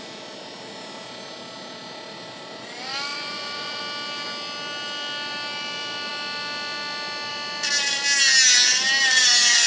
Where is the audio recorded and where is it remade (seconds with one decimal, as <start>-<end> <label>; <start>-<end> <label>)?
0.0-3.1 recorded; 3.1-3.8 remade; 3.8-9.7 recorded